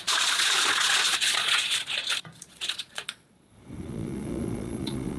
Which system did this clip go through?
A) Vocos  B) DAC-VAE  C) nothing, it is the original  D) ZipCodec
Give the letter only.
A